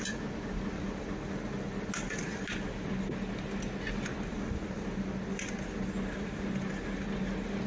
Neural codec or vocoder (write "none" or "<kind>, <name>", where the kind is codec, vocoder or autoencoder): none